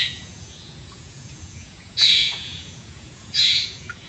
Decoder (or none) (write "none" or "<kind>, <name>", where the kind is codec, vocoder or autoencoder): vocoder, Vocos